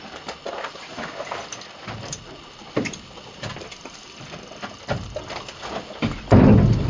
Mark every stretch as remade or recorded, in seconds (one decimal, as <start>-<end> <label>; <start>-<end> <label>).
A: 0.0-6.9 recorded